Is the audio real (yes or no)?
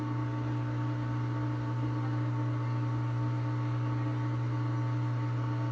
yes